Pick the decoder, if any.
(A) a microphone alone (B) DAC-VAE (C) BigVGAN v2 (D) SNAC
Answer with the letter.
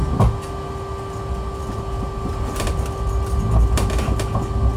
A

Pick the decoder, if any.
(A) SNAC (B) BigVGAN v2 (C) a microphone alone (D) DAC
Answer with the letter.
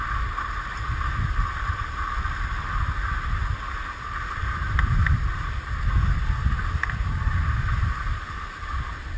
C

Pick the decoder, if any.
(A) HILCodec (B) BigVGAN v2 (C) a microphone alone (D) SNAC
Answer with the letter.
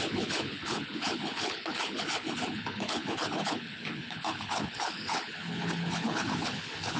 A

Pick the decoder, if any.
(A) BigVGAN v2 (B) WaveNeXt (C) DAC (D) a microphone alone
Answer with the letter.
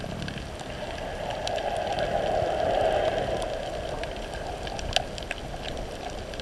D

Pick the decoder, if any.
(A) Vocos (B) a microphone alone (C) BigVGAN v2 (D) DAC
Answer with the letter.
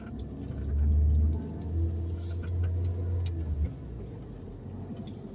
B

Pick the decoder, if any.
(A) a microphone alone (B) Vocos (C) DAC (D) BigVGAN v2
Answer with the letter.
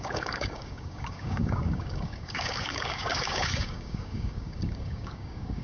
C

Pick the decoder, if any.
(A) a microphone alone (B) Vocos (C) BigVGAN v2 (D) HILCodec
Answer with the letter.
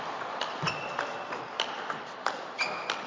A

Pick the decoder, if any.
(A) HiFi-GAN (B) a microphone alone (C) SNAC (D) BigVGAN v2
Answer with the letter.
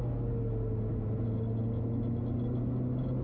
B